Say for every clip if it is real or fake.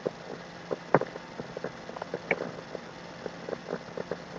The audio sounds real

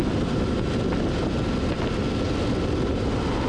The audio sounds real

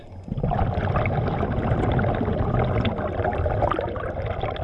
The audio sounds real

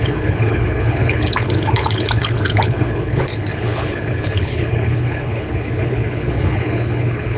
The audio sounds fake